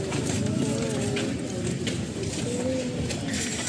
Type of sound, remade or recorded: recorded